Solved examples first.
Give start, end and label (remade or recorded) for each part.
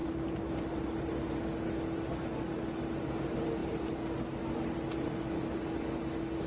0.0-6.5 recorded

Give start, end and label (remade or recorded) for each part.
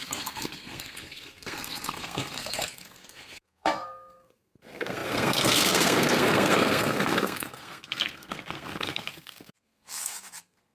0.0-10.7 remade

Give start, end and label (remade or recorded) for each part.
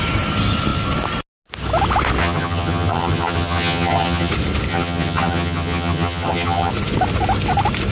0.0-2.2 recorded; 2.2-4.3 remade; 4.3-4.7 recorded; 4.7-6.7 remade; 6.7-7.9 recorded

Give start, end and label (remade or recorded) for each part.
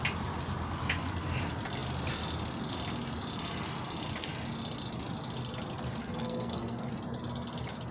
0.0-6.0 recorded; 6.0-6.9 remade; 6.9-7.9 recorded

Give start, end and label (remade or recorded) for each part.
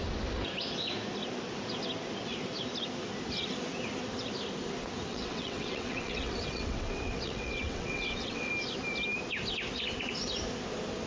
0.0-5.1 recorded; 5.1-8.5 remade; 8.5-11.1 recorded